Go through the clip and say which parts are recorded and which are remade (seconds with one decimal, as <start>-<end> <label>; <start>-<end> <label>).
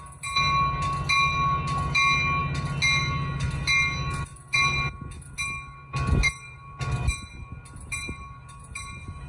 0.0-9.3 recorded